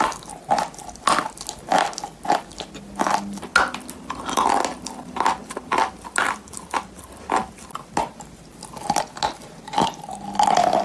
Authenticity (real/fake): real